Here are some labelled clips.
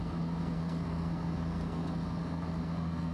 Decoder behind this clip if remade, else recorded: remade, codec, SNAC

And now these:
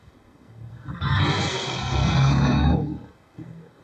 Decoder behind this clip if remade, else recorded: remade, codec, SNAC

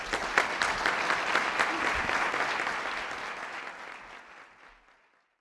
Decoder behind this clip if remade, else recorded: recorded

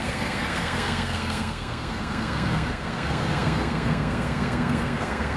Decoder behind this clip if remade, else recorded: remade, codec, SNAC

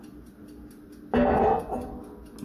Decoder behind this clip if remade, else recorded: recorded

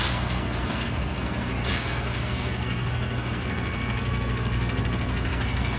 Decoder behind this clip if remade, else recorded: remade, codec, SNAC